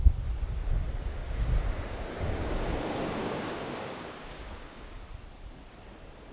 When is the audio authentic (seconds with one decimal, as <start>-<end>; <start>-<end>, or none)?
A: 0.0-1.2; 5.0-6.3